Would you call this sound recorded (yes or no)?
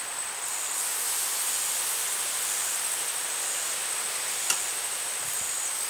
yes